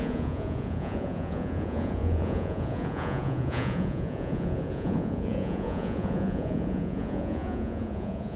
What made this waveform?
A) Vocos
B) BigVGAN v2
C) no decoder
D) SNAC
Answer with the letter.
A